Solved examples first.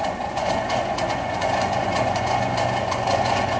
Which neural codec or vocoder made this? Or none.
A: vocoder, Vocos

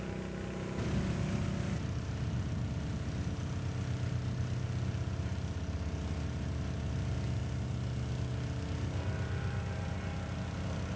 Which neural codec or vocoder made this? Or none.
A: none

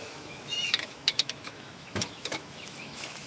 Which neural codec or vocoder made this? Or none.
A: autoencoder, DAC-VAE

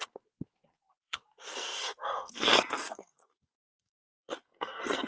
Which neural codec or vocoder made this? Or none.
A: codec, SNAC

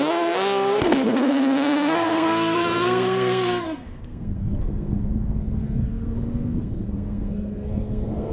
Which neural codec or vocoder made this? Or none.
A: codec, SNAC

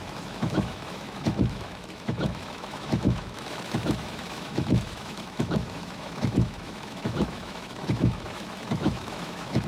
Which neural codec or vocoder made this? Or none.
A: autoencoder, DAC-VAE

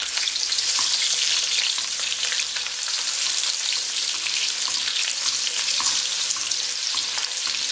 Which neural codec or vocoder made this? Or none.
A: vocoder, BigVGAN v2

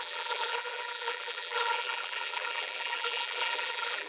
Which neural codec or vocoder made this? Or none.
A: vocoder, BigVGAN v2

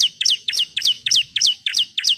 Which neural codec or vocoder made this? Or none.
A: autoencoder, DAC-VAE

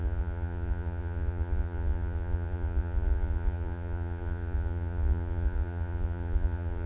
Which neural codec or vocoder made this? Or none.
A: vocoder, Vocos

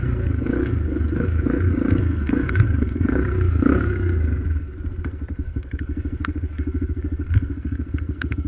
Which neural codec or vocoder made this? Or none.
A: codec, SNAC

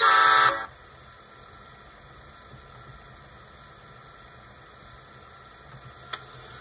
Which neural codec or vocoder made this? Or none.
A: none